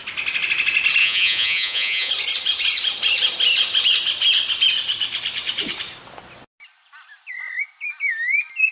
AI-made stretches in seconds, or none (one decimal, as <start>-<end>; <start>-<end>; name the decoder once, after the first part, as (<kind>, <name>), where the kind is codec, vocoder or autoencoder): 1.0-2.1 (vocoder, Vocos)